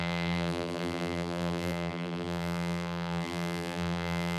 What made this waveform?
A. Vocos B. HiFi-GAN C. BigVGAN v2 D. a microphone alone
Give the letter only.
C